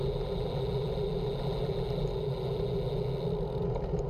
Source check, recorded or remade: recorded